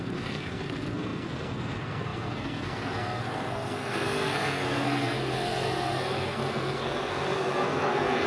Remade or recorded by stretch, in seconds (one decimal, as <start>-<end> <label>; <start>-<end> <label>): 0.0-8.3 remade